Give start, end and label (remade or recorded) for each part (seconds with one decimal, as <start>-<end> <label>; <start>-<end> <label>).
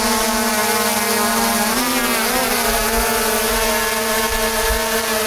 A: 0.0-5.3 recorded